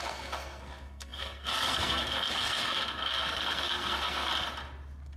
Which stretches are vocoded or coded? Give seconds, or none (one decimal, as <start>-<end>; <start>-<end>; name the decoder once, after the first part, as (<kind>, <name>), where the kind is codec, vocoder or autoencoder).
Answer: 0.0-4.3 (codec, SNAC)